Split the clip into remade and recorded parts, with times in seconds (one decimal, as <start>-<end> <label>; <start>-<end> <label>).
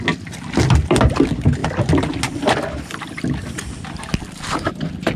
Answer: 0.0-5.2 recorded